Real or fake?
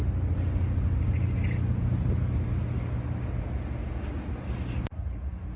real